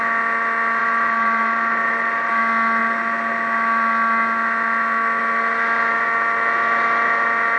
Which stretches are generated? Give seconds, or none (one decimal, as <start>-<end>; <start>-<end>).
0.8-2.3